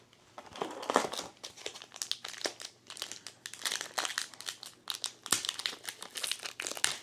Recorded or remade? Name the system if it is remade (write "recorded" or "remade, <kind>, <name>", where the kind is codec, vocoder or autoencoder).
recorded